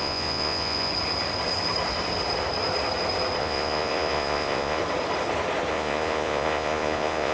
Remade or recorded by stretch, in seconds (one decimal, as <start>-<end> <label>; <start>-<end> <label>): 0.0-0.9 remade; 0.9-3.4 recorded; 3.4-4.8 remade; 4.8-5.7 recorded; 5.7-7.3 remade